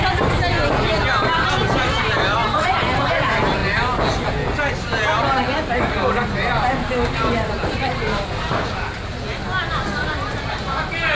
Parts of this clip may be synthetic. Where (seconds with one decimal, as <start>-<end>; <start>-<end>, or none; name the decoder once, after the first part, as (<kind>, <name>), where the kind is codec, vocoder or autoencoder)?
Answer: none